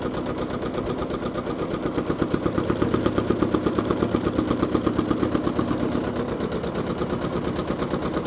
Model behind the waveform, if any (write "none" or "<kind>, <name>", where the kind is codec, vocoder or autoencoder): none